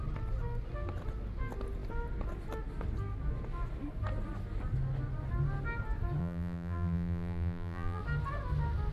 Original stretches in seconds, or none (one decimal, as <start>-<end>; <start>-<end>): 0.0-6.2; 8.0-8.9